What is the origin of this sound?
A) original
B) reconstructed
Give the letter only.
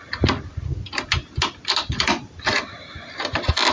A